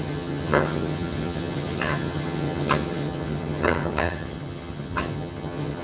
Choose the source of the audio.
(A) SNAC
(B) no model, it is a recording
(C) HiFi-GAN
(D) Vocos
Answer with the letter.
C